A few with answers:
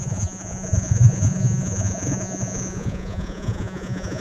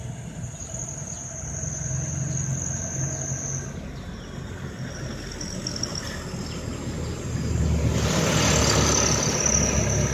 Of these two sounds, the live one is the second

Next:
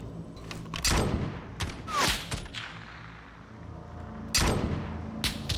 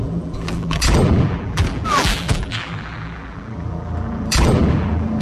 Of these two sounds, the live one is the first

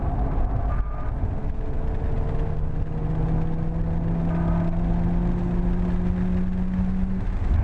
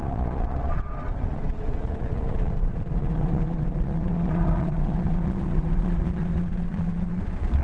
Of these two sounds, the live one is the first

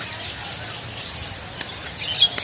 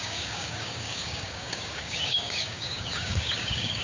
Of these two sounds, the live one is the first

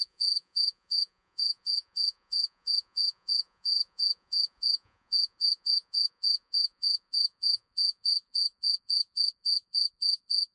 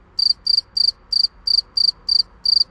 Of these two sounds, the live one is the second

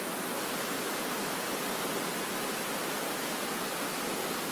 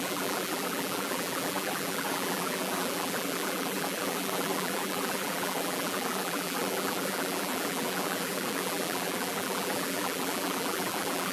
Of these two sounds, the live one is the first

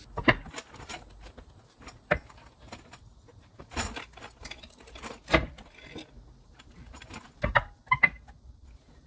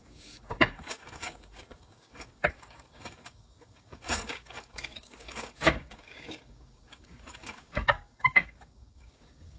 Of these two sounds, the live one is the first